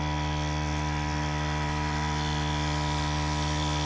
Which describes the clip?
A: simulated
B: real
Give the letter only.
B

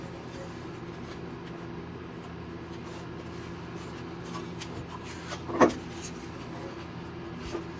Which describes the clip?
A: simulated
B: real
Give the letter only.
B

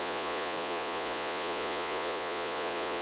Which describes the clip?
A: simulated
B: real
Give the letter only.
A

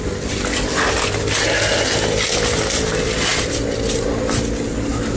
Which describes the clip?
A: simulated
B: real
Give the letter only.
B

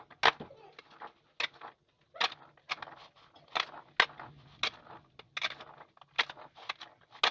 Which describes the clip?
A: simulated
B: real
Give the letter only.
B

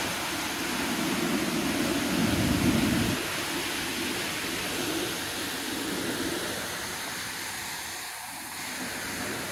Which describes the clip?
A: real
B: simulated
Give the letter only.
A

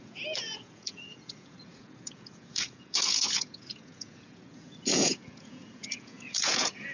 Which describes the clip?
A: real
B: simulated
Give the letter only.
B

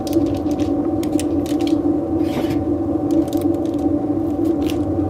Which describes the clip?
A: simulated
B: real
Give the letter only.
B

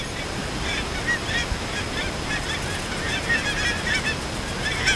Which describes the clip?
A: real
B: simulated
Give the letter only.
A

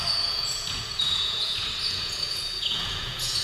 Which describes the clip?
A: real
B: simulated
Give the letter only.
B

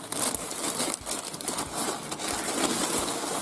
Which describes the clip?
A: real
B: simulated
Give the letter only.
A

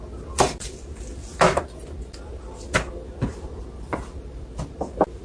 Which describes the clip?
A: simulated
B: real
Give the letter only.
B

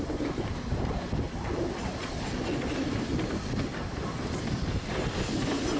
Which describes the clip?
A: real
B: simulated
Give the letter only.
A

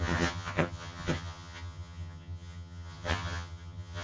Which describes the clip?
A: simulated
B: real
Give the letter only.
A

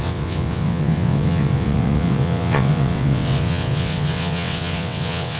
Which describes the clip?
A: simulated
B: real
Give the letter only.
A